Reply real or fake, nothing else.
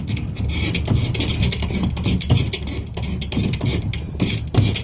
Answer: real